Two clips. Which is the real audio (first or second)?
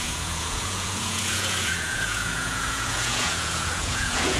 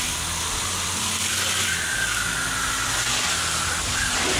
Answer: second